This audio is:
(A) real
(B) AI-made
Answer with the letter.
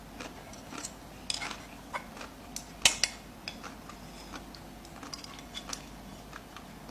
A